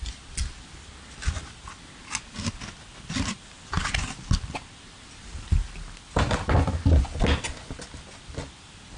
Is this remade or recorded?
recorded